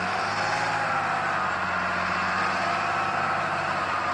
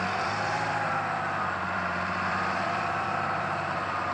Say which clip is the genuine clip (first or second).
first